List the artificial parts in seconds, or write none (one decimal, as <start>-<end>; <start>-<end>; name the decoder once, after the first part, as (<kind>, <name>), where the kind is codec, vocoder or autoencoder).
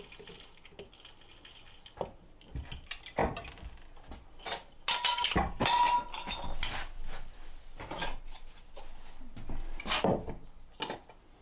none